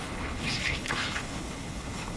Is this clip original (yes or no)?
no